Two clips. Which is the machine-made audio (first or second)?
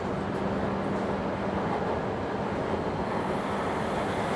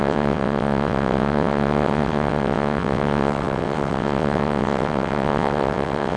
second